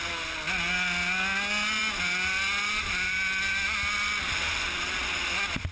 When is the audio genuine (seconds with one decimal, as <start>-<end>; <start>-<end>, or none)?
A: 0.0-5.7